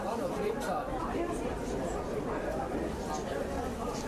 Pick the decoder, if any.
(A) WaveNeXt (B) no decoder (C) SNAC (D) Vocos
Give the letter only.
B